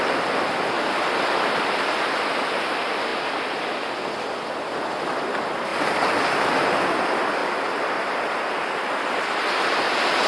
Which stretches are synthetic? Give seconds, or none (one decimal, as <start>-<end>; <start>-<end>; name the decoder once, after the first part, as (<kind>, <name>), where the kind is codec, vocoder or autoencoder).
none